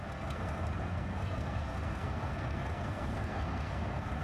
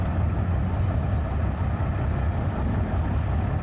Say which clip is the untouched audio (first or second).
second